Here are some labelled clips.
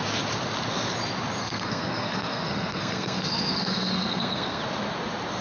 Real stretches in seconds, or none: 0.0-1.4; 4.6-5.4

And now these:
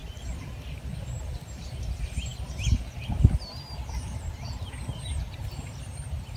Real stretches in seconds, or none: 0.0-6.4

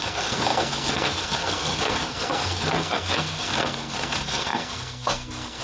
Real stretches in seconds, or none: none

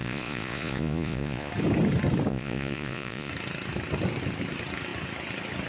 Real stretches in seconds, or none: 1.5-2.3; 3.3-5.7

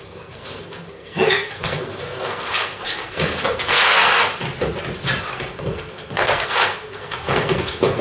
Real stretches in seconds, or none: 4.4-5.3

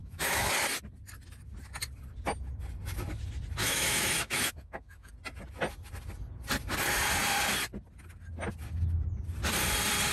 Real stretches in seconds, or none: 0.5-3.6; 5.1-10.1